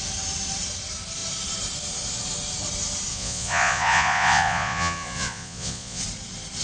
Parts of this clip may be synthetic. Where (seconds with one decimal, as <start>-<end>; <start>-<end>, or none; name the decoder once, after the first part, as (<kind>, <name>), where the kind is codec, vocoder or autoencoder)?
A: 3.1-6.0 (vocoder, Vocos)